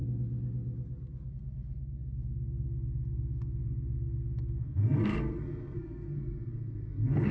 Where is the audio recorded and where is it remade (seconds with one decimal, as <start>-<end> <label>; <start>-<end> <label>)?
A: 0.0-1.3 recorded; 1.3-7.3 remade